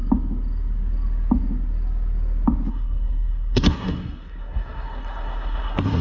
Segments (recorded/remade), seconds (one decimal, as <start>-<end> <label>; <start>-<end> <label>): 0.0-2.7 recorded; 2.7-6.0 remade